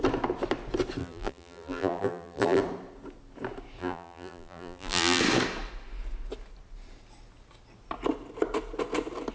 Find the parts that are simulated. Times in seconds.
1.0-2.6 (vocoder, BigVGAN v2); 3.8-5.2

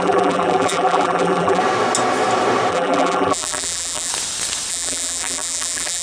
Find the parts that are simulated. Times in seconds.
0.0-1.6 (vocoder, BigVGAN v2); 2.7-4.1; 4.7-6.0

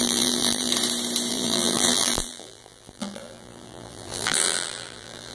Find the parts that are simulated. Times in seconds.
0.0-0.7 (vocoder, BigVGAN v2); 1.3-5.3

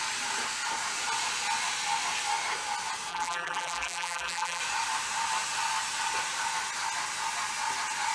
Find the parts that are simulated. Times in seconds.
3.1-4.6 (vocoder, BigVGAN v2)

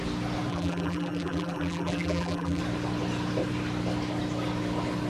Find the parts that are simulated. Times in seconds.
0.5-2.6 (vocoder, BigVGAN v2)

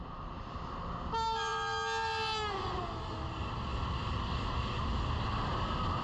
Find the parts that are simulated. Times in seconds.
3.7-5.1 (vocoder, BigVGAN v2)

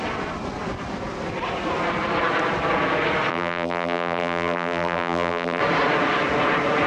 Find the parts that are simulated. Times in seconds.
3.3-5.6 (vocoder, BigVGAN v2)